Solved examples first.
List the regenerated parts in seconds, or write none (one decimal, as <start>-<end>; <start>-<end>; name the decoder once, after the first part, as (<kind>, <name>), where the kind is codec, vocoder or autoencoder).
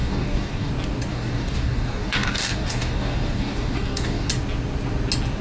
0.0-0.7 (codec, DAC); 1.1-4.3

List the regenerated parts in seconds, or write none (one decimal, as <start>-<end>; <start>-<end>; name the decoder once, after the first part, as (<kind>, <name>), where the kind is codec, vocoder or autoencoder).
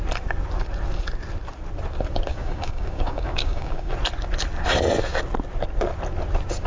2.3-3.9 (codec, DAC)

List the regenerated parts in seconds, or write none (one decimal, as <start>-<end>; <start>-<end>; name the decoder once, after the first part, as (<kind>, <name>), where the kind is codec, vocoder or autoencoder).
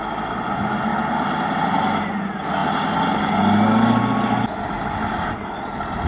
none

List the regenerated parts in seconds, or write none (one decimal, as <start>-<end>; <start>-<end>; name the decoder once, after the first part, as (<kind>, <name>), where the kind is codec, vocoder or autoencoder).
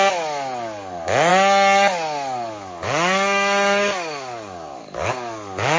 0.0-5.8 (codec, DAC)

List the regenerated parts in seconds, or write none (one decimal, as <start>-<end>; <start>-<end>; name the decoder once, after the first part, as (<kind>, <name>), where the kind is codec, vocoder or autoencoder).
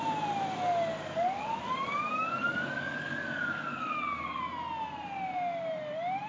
0.9-4.4 (codec, DAC)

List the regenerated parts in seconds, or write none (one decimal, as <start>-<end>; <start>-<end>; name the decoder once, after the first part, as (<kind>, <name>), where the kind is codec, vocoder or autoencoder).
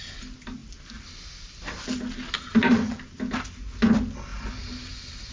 none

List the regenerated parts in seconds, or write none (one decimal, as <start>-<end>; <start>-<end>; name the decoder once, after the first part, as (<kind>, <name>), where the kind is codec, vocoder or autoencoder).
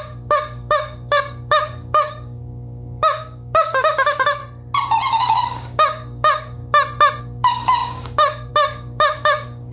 0.0-4.4 (codec, DAC); 5.1-6.6; 7.2-9.7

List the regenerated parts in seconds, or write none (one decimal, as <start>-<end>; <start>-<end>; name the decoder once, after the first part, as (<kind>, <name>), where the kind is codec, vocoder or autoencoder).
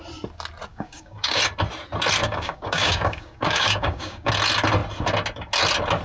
0.7-1.4 (codec, DAC); 2.2-4.3